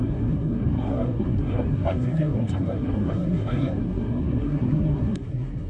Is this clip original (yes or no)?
no